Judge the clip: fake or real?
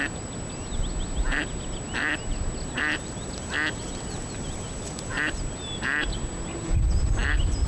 real